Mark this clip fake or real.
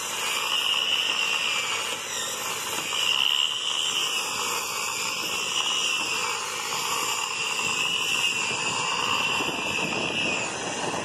real